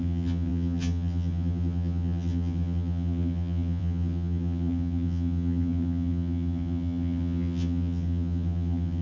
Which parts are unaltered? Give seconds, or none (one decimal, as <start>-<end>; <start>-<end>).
none